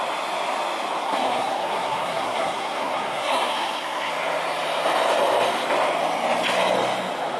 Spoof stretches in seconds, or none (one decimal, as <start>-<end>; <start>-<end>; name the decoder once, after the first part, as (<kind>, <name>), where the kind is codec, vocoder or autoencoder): 1.0-4.1 (codec, SNAC)